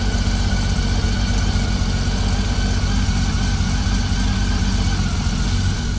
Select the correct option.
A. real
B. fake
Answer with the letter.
A